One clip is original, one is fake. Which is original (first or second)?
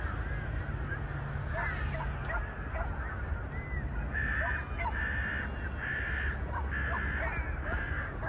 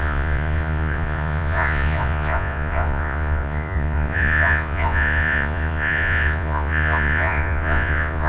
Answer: first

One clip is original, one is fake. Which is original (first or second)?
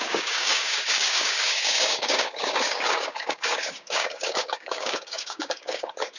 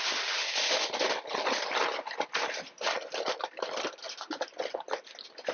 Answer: second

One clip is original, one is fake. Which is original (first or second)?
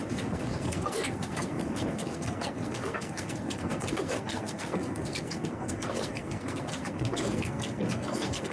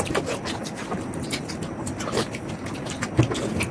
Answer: second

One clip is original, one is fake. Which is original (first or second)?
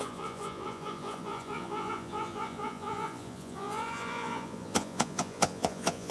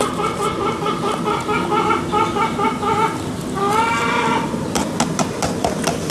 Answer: second